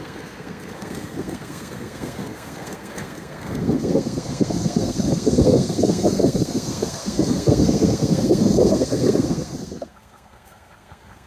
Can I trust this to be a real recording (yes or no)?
no